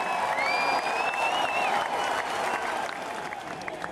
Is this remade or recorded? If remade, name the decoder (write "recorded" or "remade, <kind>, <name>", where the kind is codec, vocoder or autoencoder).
recorded